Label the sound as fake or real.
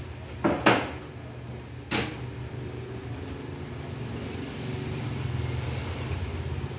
real